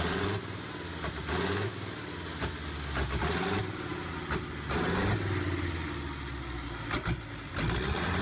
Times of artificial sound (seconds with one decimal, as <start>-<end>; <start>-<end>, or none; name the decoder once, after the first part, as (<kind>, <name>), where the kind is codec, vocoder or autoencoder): none